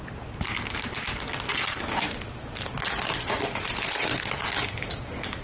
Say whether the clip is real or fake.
real